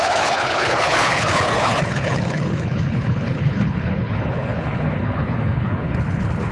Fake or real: fake